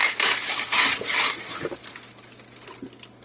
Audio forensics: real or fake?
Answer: real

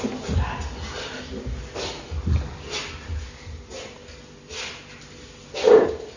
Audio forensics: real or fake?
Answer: real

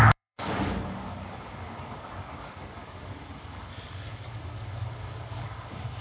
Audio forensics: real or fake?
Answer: fake